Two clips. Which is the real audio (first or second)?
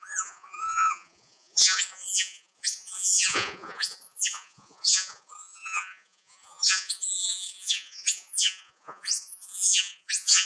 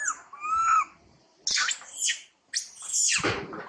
second